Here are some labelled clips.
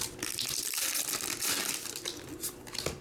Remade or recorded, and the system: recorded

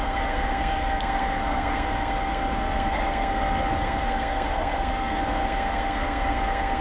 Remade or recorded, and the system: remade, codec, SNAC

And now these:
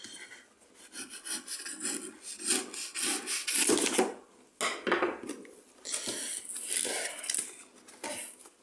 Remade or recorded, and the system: recorded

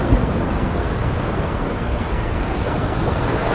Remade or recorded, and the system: remade, codec, SNAC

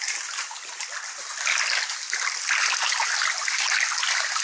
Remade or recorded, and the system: recorded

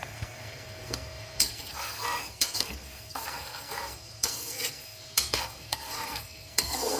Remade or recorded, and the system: remade, codec, SNAC